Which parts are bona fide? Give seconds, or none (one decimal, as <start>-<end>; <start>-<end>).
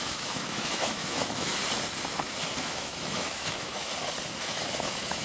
1.5-2.6; 3.9-4.4